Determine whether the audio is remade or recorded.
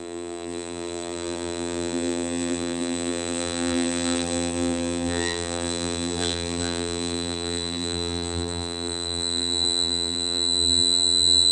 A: remade